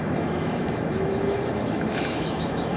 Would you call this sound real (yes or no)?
no